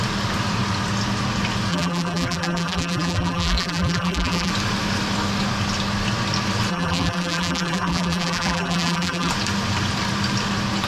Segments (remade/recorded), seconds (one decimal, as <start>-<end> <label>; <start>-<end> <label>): 0.0-1.7 recorded; 1.7-4.5 remade; 4.5-6.7 recorded; 6.7-9.3 remade; 9.3-10.9 recorded